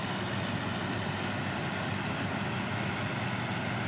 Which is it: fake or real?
real